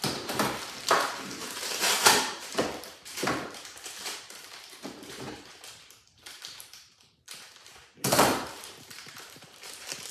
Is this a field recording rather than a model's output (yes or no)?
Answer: no